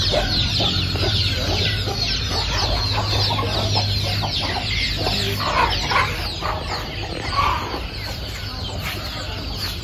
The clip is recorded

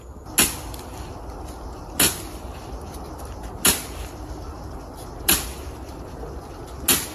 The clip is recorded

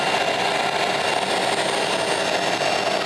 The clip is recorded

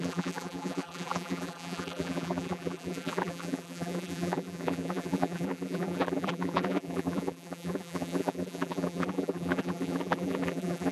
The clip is remade